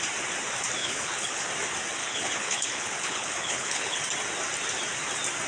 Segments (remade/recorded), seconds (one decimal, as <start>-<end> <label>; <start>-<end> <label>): 0.0-0.8 recorded; 0.8-1.4 remade; 1.4-2.0 recorded; 2.0-4.0 remade; 4.0-5.5 recorded